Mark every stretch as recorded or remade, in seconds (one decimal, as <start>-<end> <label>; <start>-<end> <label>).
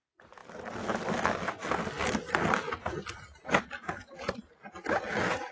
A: 0.0-0.4 remade; 0.4-3.6 recorded; 3.6-5.5 remade